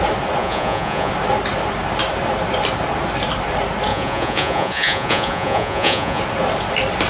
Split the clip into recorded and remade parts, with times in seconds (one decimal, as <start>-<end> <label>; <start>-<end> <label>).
0.0-0.4 recorded; 0.4-1.1 remade; 1.1-3.9 recorded; 3.9-6.2 remade; 6.2-7.1 recorded